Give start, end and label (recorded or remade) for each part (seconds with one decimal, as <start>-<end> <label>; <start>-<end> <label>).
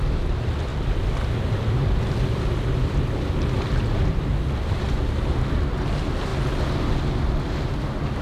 0.0-8.2 recorded